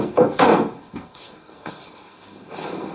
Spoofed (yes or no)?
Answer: yes